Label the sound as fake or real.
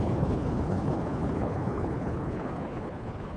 fake